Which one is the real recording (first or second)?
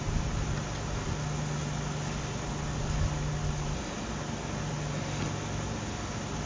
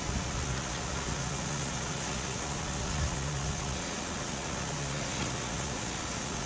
first